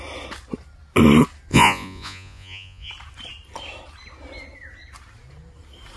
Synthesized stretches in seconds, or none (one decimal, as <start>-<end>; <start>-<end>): 1.5-2.9